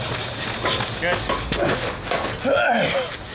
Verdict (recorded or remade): recorded